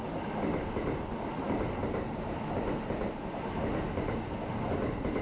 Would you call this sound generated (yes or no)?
no